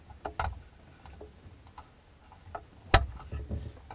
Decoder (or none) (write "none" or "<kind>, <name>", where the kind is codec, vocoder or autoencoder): none